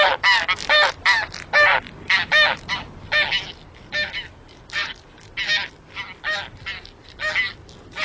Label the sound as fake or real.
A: real